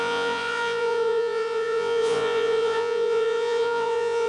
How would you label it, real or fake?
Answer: fake